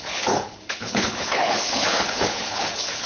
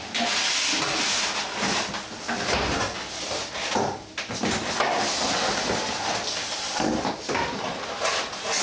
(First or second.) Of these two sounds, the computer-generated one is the first